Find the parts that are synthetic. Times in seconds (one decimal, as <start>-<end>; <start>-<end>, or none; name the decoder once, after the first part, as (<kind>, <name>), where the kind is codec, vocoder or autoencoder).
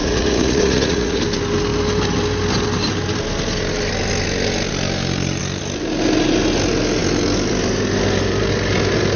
0.0-1.2 (vocoder, Vocos)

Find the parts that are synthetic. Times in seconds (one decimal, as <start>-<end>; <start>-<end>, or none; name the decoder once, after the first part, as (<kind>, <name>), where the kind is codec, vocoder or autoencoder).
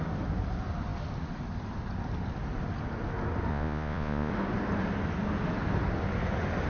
3.5-4.3 (vocoder, Vocos)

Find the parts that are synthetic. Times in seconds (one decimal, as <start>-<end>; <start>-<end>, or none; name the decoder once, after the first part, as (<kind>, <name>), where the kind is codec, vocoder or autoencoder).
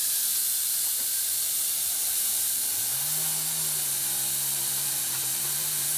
0.0-2.9 (vocoder, BigVGAN v2); 4.5-6.0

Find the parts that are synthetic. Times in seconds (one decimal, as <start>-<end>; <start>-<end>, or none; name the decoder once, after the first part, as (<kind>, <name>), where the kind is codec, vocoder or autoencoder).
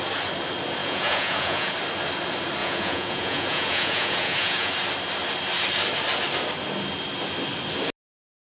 0.8-1.7 (vocoder, Vocos); 2.6-4.7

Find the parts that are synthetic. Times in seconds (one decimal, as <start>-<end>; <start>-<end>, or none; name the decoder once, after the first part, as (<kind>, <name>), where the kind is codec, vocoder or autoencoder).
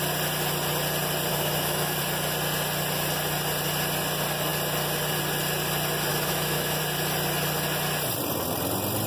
1.3-2.0 (autoencoder, DAC-VAE); 6.1-6.8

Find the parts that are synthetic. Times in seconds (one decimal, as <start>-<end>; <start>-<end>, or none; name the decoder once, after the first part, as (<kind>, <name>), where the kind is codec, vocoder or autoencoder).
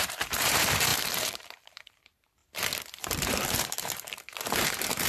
0.0-2.4 (vocoder, BigVGAN v2); 3.2-5.1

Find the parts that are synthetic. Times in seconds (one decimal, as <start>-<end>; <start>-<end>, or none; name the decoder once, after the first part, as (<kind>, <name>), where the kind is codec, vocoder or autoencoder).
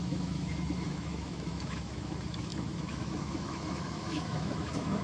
0.0-5.0 (autoencoder, DAC-VAE)